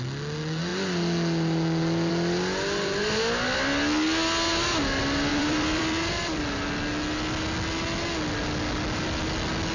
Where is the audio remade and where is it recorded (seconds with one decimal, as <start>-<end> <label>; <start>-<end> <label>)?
0.0-5.3 recorded; 5.3-6.4 remade; 6.4-9.7 recorded